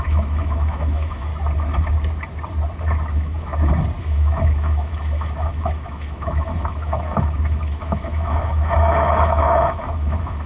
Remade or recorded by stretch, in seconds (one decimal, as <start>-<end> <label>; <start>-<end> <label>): 0.0-1.3 remade; 1.3-3.1 recorded; 3.1-3.5 remade; 3.5-4.0 recorded; 4.0-10.5 remade